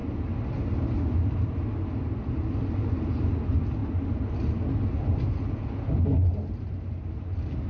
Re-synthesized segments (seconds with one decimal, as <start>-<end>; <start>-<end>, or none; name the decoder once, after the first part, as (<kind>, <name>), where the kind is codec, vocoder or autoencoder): none